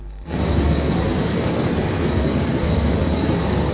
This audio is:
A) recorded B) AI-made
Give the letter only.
B